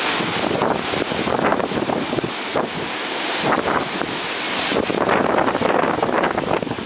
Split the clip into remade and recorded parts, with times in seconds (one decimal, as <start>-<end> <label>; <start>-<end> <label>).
0.0-1.5 recorded; 1.5-4.1 remade; 4.1-6.9 recorded